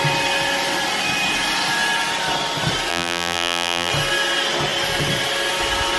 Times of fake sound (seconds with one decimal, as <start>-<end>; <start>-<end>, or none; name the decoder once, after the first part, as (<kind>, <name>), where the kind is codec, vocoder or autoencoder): 2.9-3.9 (vocoder, BigVGAN v2)